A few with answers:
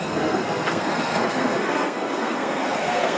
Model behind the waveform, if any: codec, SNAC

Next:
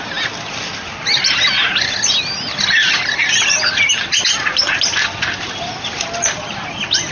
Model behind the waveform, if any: none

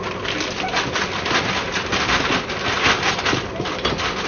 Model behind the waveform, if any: none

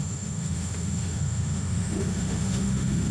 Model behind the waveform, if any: autoencoder, DAC-VAE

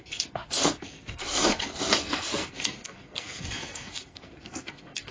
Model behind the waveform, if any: codec, SNAC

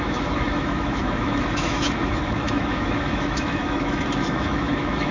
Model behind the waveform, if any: autoencoder, DAC-VAE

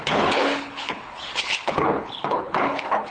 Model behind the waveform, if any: codec, HILCodec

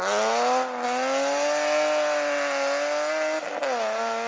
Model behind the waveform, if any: none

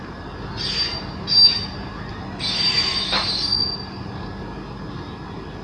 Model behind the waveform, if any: none